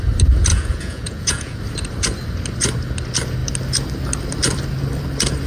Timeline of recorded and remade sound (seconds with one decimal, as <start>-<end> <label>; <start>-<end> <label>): 0.0-0.5 recorded; 0.5-1.6 remade; 1.6-5.5 recorded